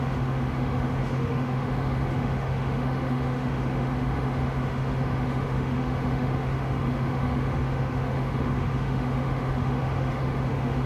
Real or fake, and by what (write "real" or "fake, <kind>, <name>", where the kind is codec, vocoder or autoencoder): fake, autoencoder, DAC-VAE